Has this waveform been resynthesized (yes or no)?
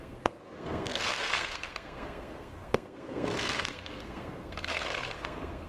yes